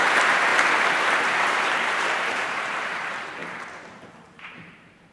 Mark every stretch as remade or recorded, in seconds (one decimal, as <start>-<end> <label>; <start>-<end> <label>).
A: 0.0-0.5 remade; 0.5-1.2 recorded; 1.2-5.1 remade